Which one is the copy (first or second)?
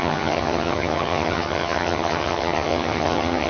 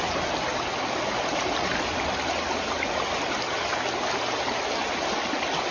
first